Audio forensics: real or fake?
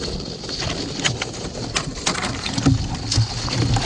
real